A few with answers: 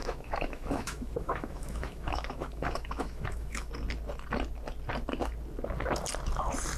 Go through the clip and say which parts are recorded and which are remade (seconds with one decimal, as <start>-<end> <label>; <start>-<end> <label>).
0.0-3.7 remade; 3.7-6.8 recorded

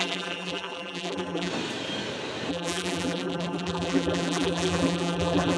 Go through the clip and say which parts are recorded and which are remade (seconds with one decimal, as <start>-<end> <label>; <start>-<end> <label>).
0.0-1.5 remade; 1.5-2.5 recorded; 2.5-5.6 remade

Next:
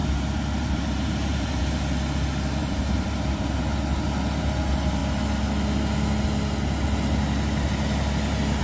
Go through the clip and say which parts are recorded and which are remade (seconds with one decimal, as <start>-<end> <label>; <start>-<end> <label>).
0.0-1.6 remade; 1.6-2.6 recorded; 2.6-3.6 remade; 3.6-8.6 recorded